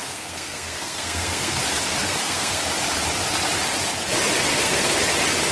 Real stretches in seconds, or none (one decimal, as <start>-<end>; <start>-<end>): 1.6-2.0; 2.6-4.5; 5.0-5.5